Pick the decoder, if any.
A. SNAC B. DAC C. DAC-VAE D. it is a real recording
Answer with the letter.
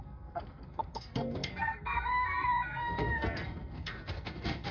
A